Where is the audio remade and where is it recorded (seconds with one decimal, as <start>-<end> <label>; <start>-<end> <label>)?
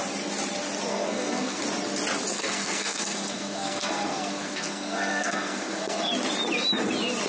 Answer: 0.0-0.9 recorded; 0.9-1.6 remade; 1.6-2.3 recorded; 2.3-6.1 remade; 6.1-7.3 recorded